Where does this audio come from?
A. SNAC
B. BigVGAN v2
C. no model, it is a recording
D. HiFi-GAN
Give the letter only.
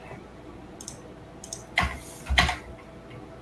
C